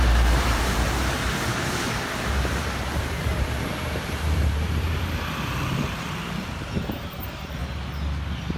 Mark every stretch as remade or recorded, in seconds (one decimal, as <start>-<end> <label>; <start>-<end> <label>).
0.0-7.6 remade; 7.6-8.6 recorded